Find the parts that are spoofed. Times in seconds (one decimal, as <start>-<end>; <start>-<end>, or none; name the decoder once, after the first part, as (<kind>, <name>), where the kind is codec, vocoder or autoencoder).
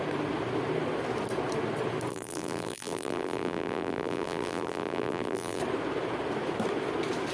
2.1-5.6 (vocoder, BigVGAN v2)